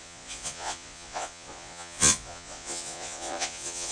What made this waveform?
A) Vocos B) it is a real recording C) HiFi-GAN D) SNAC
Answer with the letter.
A